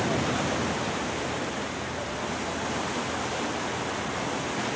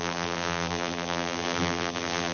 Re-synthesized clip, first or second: second